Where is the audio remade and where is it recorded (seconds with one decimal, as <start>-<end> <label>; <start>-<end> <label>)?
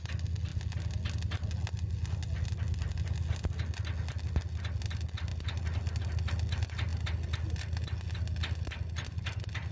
0.0-9.7 recorded